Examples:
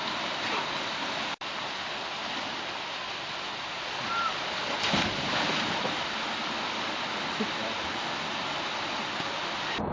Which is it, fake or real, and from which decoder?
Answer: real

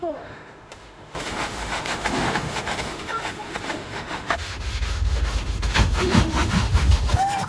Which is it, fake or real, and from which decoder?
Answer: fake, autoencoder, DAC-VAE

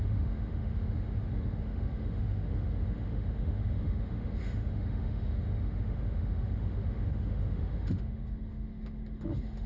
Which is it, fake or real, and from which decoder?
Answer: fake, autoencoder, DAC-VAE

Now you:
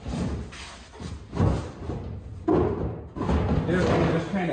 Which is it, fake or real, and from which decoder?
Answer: real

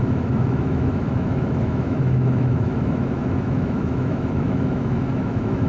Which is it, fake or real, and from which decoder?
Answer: fake, autoencoder, DAC-VAE